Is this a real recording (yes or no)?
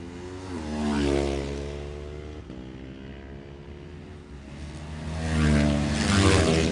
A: yes